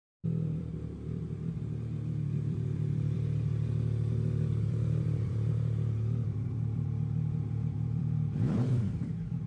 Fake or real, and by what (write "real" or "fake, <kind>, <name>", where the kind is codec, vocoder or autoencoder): fake, vocoder, BigVGAN v2